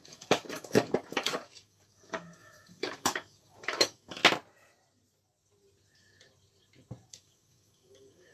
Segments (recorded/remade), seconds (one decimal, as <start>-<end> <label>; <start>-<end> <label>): 0.0-4.2 remade; 4.2-7.1 recorded; 7.1-8.3 remade